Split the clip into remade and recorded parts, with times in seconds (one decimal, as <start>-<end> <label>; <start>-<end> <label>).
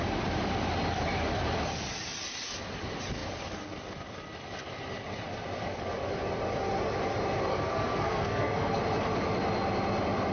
0.0-7.5 recorded; 7.5-8.8 remade; 8.8-10.3 recorded